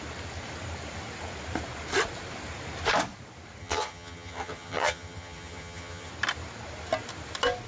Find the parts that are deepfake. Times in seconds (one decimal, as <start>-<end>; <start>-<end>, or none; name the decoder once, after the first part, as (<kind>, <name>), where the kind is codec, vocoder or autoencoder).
3.6-6.1 (vocoder, HiFi-GAN)